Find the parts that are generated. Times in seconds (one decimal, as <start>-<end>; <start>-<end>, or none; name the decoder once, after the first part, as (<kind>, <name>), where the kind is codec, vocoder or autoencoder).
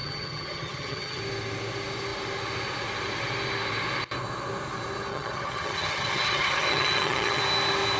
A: 0.0-1.2 (vocoder, HiFi-GAN); 5.1-7.4